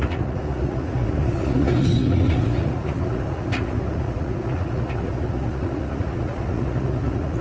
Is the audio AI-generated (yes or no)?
yes